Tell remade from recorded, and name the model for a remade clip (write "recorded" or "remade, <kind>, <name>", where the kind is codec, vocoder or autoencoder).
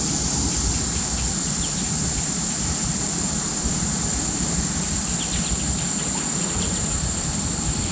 recorded